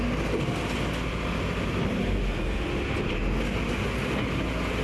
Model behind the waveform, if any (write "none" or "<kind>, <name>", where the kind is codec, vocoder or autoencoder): none